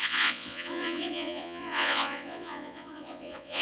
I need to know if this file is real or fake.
fake